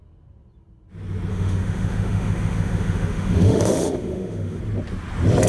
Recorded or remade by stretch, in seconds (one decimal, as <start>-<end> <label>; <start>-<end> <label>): 0.0-1.3 recorded; 1.3-4.6 remade; 4.6-5.5 recorded